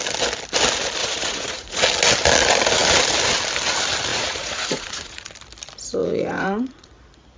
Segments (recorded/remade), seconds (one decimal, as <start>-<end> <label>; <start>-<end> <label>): 0.0-1.0 recorded; 1.0-1.8 remade; 1.8-4.1 recorded; 4.1-5.3 remade; 5.3-6.0 recorded; 6.0-6.9 remade; 6.9-7.4 recorded